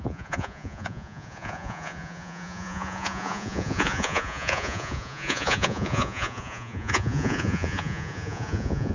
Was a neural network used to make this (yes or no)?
yes